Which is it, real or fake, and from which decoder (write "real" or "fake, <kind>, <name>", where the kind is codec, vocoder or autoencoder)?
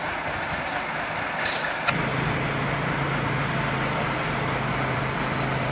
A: fake, vocoder, BigVGAN v2